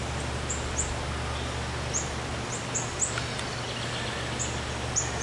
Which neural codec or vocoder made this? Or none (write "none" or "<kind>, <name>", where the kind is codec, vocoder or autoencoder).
none